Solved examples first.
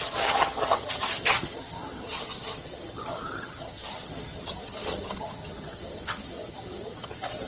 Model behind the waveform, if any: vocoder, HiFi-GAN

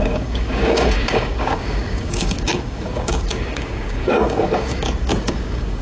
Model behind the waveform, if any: codec, DAC